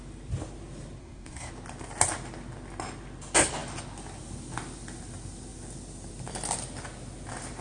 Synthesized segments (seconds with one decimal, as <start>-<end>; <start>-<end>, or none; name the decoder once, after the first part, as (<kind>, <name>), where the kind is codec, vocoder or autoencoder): 1.0-1.5 (codec, SNAC)